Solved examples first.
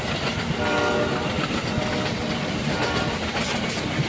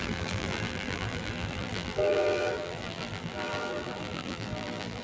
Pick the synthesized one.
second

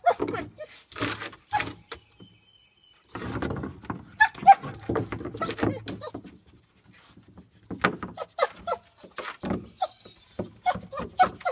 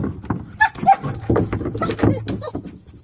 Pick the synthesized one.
second